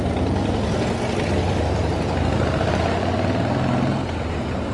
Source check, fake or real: real